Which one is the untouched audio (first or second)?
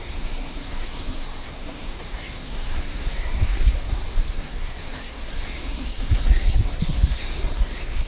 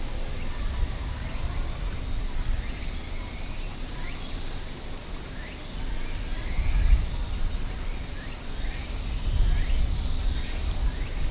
second